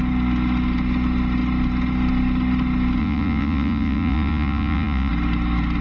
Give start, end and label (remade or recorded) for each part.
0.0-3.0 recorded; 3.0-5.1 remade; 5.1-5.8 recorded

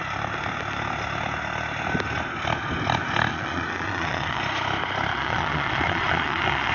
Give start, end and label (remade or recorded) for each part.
0.0-3.3 recorded; 3.3-4.4 remade; 4.4-5.1 recorded; 5.1-6.7 remade

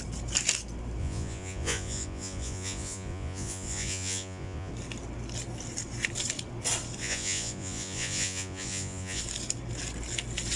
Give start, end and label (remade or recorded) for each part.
0.0-1.0 recorded; 1.0-4.7 remade; 4.7-7.0 recorded; 7.0-9.2 remade; 9.2-10.6 recorded

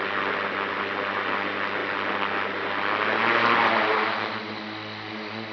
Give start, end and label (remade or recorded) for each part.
0.0-5.5 recorded

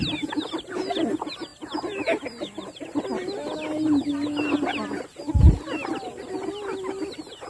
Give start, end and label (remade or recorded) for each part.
0.0-7.5 recorded

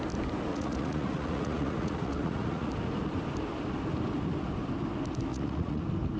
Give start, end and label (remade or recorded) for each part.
0.0-0.5 recorded; 0.5-2.7 remade; 2.7-5.3 recorded; 5.3-5.8 remade; 5.8-6.2 recorded

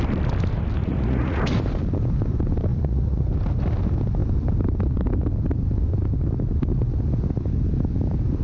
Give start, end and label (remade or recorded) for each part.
0.0-0.8 recorded; 0.8-1.4 remade; 1.4-2.7 recorded; 2.7-3.3 remade; 3.3-8.4 recorded

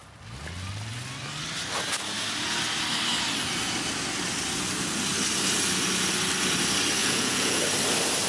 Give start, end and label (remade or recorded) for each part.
0.0-7.0 recorded; 7.0-7.6 remade; 7.6-8.3 recorded